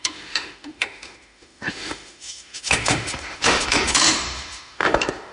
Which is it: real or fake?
fake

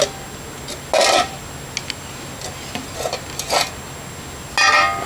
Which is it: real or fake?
real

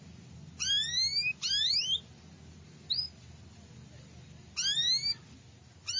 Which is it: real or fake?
real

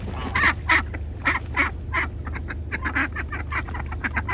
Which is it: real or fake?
real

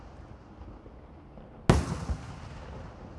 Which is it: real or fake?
real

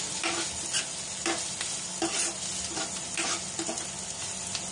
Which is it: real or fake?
real